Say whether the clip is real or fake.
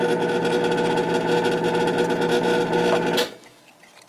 real